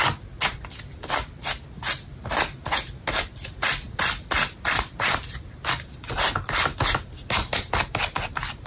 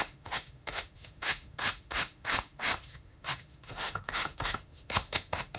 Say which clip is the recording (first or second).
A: first